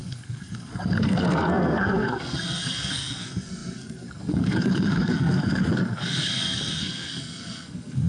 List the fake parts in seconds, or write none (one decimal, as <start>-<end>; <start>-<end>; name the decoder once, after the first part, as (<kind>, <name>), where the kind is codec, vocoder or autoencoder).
0.0-8.1 (codec, SNAC)